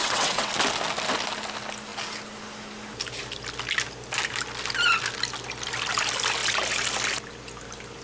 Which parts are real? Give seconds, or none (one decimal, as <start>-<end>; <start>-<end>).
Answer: 0.5-8.0